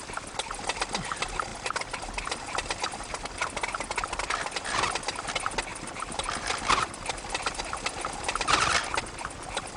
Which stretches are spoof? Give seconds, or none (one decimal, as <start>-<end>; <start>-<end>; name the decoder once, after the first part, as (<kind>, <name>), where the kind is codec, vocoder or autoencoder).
1.5-4.5 (vocoder, BigVGAN v2); 5.7-7.6